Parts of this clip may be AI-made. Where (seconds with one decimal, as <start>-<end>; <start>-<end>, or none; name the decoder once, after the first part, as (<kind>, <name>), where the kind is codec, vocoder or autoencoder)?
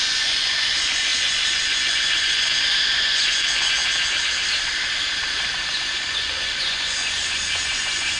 0.0-3.8 (vocoder, Vocos); 5.7-8.2